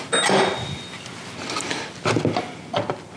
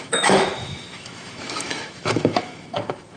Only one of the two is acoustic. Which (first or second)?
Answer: first